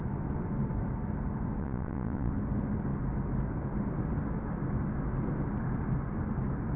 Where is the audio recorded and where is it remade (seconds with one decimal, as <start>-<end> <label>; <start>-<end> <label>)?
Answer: 0.0-1.6 recorded; 1.6-2.3 remade; 2.3-6.8 recorded